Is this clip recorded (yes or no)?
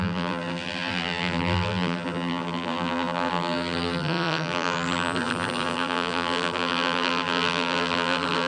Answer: no